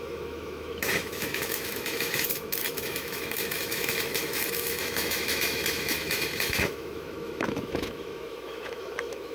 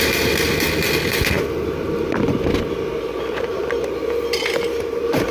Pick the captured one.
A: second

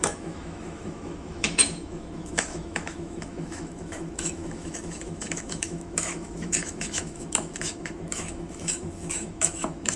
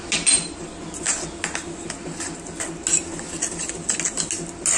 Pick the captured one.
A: second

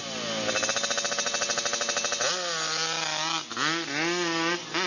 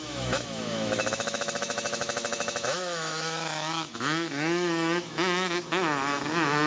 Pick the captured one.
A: first